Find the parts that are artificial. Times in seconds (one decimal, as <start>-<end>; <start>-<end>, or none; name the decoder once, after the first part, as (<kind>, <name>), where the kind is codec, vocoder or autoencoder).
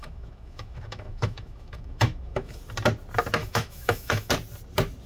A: 0.0-2.6 (autoencoder, DAC-VAE); 3.4-4.3